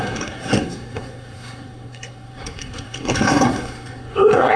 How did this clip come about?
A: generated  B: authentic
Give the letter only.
A